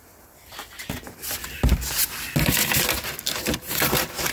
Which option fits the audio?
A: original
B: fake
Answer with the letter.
A